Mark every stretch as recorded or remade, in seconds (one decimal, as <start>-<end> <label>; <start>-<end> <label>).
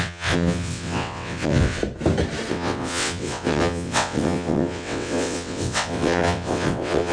0.0-1.8 remade; 1.8-2.5 recorded; 2.5-7.1 remade